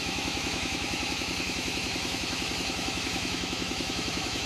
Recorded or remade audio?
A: remade